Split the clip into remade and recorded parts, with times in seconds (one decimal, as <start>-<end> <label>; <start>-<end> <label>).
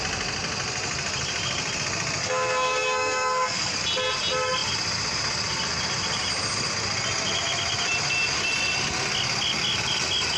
0.0-2.2 recorded; 2.2-3.8 remade; 3.8-10.4 recorded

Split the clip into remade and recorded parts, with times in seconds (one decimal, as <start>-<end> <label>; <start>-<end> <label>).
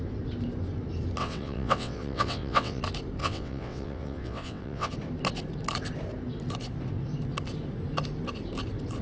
0.0-1.2 recorded; 1.2-2.8 remade; 2.8-3.2 recorded; 3.2-4.9 remade; 4.9-9.0 recorded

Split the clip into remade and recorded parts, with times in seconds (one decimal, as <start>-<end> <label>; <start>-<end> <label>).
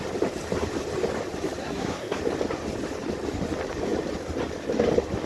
0.0-1.6 recorded; 1.6-2.2 remade; 2.2-5.3 recorded